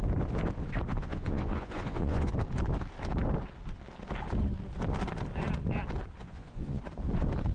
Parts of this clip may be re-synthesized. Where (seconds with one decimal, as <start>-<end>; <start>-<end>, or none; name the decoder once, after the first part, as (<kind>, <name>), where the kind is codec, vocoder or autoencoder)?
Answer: 0.9-2.3 (vocoder, Vocos); 6.2-6.8